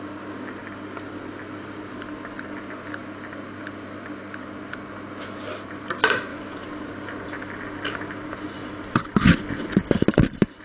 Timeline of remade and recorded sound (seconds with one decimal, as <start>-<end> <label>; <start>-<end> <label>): 0.0-6.3 recorded; 6.3-9.9 remade; 9.9-10.6 recorded